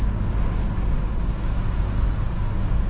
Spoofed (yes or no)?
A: no